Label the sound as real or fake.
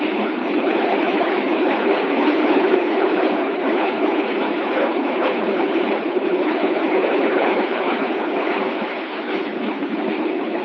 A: fake